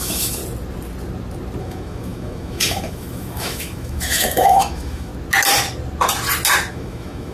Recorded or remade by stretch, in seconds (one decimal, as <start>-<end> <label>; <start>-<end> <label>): 0.0-0.4 remade; 0.4-1.6 recorded; 1.6-5.1 remade; 5.1-6.7 recorded; 6.7-7.3 remade